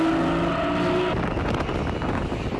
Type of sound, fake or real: real